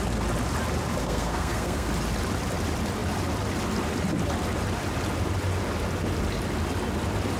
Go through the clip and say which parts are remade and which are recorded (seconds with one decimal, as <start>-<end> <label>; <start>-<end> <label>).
0.0-1.0 recorded; 1.0-1.9 remade; 1.9-7.4 recorded